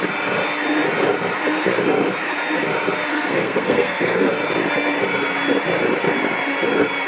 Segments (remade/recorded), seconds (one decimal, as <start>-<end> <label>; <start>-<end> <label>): 0.0-3.1 recorded; 3.1-4.3 remade; 4.3-7.1 recorded